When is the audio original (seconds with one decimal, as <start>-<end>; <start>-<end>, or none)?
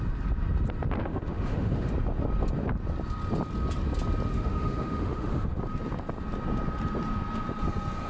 0.0-1.0; 1.9-4.3; 5.6-8.1